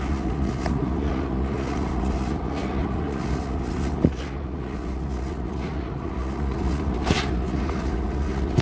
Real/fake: fake